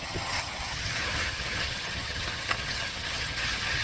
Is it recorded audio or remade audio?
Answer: remade